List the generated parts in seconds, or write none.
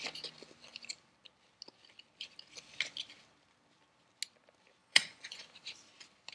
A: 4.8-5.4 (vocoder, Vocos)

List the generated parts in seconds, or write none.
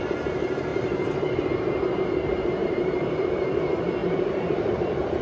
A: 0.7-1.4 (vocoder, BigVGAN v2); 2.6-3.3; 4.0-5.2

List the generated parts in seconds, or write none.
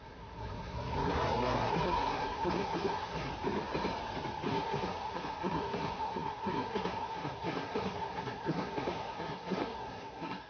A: 0.0-3.3 (codec, SNAC); 4.5-10.5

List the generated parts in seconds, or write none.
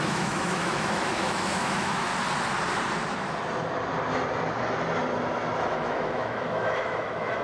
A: 0.0-2.1 (autoencoder, DAC-VAE); 5.6-7.4